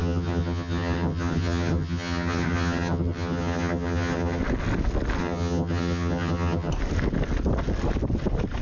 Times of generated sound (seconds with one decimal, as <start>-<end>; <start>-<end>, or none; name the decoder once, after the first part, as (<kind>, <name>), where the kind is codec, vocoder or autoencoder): 0.0-4.4 (vocoder, HiFi-GAN); 5.2-6.7

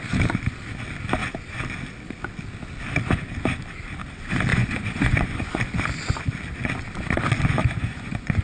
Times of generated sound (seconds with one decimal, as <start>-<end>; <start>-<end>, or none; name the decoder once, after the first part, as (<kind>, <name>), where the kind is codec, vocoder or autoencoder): 4.5-5.6 (vocoder, Vocos); 7.6-8.4

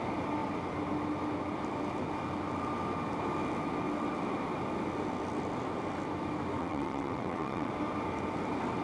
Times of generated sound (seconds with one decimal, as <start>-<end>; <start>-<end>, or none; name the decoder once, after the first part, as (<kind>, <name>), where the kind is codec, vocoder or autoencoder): 6.6-7.7 (vocoder, WaveNeXt)

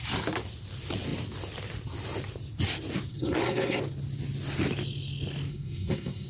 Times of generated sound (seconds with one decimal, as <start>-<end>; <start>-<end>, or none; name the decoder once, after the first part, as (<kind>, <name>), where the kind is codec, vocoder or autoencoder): 3.1-3.8 (codec, SNAC); 5.5-6.3

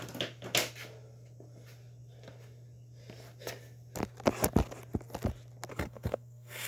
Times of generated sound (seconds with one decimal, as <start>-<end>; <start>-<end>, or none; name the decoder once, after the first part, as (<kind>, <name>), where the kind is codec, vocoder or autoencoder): 5.7-6.7 (codec, SNAC)

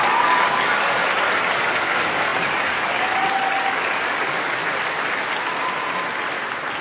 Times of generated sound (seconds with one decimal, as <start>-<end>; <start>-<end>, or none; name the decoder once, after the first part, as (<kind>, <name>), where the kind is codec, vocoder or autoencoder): 0.0-1.0 (codec, DAC); 1.8-4.6

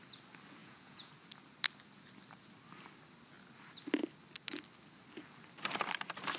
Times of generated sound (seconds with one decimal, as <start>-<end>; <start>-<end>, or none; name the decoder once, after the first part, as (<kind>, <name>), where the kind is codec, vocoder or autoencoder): 0.6-1.1 (vocoder, Vocos)

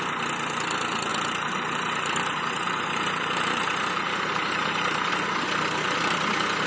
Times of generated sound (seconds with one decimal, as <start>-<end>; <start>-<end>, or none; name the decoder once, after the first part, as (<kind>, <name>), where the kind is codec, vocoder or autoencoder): 1.1-5.1 (vocoder, BigVGAN v2)